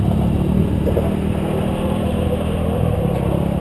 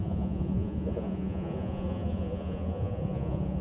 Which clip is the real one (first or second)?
first